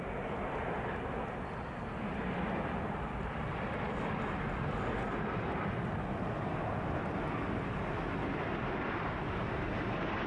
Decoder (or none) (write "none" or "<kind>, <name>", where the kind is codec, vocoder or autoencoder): none